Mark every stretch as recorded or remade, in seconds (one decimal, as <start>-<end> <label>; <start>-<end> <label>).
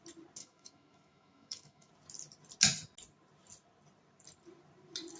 0.0-0.4 recorded; 0.4-1.9 remade; 1.9-5.2 recorded